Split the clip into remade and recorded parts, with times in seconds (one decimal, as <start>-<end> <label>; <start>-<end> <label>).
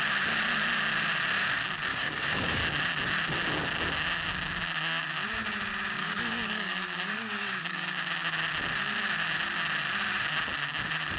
0.0-1.9 recorded; 1.9-2.6 remade; 2.6-6.0 recorded; 6.0-7.9 remade; 7.9-11.2 recorded